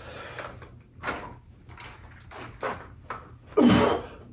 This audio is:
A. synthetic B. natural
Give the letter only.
B